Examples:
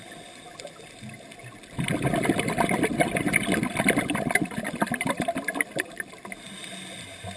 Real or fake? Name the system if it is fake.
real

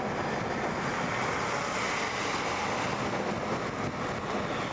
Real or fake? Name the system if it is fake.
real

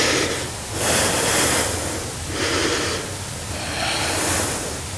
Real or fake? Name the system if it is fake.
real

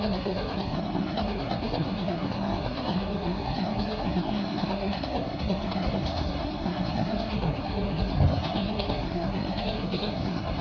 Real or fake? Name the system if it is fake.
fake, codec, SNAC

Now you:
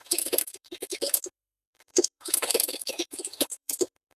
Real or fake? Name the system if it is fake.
fake, autoencoder, DAC-VAE